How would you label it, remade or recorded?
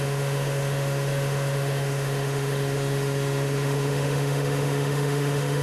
remade